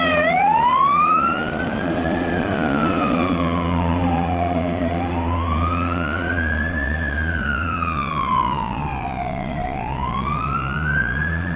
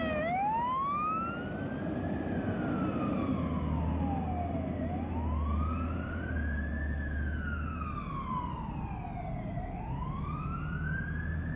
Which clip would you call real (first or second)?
second